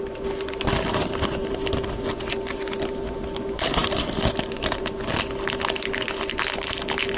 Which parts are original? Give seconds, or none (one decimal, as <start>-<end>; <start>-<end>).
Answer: 0.0-7.2